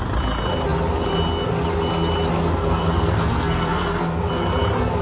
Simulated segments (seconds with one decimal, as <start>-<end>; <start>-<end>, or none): 2.5-4.3